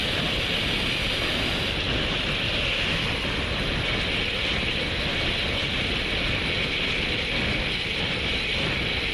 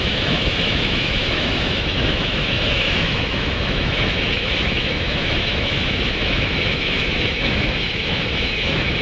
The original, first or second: first